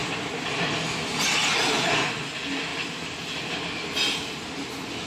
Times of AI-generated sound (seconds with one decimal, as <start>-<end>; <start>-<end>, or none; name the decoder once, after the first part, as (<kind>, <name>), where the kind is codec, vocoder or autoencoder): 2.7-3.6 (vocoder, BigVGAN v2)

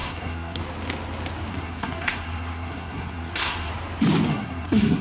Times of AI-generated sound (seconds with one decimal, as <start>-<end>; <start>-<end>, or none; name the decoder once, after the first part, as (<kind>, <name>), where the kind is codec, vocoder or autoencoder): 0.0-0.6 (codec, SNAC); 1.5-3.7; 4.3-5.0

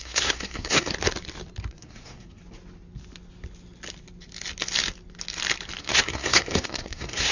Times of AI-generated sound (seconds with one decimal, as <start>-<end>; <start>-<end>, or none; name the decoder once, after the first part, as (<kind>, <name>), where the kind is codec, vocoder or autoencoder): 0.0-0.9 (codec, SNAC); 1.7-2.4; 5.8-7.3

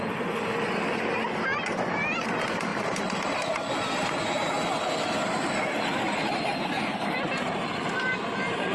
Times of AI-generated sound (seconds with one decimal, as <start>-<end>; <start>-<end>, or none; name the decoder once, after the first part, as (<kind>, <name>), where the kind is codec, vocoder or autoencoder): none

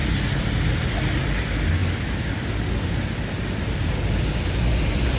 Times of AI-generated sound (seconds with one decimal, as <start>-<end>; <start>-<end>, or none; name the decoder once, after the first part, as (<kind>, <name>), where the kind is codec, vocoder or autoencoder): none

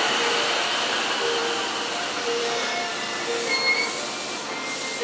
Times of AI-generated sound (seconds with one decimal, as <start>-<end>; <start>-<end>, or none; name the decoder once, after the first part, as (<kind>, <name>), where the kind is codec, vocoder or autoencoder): none

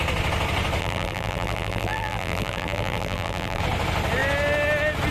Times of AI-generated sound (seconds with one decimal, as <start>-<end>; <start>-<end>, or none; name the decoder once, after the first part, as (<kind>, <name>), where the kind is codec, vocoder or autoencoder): 0.8-3.6 (vocoder, BigVGAN v2)

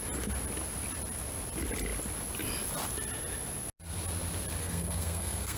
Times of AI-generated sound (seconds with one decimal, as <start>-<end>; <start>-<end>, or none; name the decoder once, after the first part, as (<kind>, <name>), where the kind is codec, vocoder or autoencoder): 4.6-5.6 (codec, SNAC)